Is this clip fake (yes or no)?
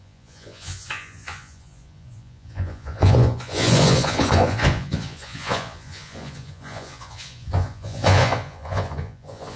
yes